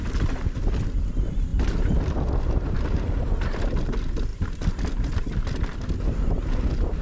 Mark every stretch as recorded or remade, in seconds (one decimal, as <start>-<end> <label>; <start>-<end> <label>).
0.0-7.0 recorded